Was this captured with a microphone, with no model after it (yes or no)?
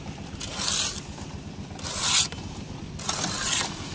yes